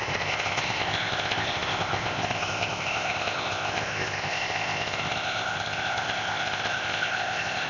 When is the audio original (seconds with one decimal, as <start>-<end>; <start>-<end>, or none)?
none